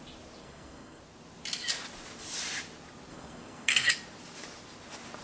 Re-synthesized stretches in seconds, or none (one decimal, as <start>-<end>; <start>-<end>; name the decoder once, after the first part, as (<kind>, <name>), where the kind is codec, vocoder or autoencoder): 0.4-1.0 (codec, SNAC); 3.1-3.9